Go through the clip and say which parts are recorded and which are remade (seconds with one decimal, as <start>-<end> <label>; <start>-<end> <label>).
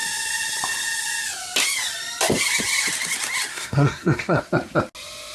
0.0-3.5 recorded; 3.5-4.4 remade; 4.4-5.3 recorded